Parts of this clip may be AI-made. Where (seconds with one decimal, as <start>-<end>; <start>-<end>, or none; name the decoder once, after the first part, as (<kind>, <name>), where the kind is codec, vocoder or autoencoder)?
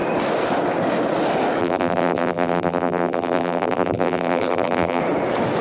1.6-5.0 (vocoder, BigVGAN v2)